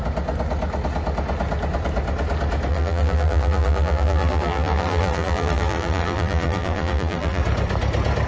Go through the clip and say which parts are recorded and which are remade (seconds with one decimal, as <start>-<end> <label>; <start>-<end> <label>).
0.0-2.7 recorded; 2.7-7.4 remade; 7.4-8.3 recorded